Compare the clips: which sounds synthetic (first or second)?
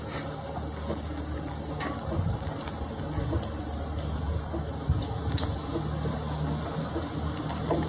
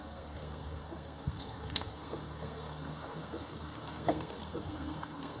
second